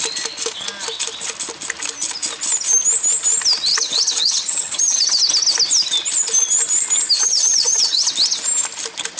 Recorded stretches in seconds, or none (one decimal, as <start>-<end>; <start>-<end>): 0.0-3.7; 5.2-7.2; 8.1-9.2